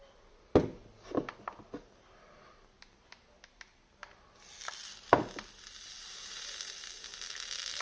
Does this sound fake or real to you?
real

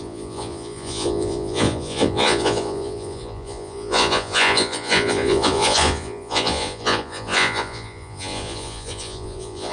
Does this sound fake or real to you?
fake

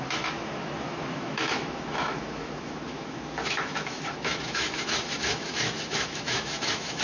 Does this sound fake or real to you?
fake